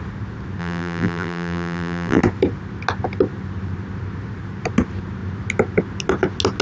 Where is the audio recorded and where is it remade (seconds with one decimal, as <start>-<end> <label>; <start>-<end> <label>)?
0.0-0.6 recorded; 0.6-2.2 remade; 2.2-6.6 recorded